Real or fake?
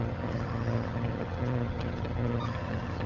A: fake